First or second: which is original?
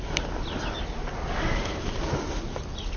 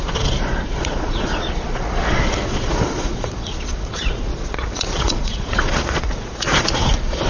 first